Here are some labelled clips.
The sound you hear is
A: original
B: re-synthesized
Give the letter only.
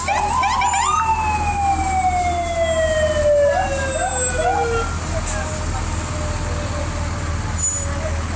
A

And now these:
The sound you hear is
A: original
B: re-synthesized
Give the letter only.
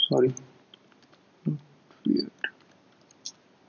A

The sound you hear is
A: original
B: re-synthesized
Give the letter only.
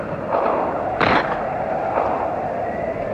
A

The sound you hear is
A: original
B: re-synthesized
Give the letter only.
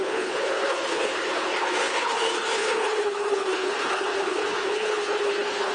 B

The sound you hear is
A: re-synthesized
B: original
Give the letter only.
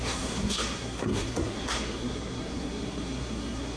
A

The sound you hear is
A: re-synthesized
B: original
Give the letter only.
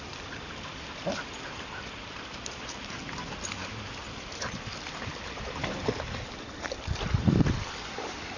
B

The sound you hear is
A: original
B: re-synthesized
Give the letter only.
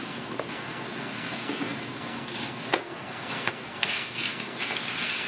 B